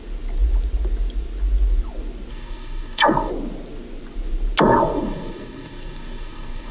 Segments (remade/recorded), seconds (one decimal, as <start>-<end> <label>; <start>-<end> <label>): 0.0-2.3 recorded; 2.3-3.3 remade; 3.3-4.6 recorded; 4.6-6.7 remade